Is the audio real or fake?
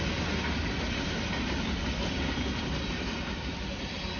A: real